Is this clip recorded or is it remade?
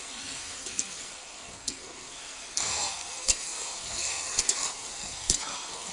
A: remade